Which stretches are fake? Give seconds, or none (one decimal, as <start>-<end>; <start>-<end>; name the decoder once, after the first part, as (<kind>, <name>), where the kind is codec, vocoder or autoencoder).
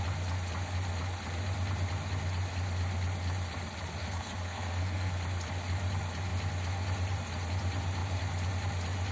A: 4.0-5.1 (codec, SNAC)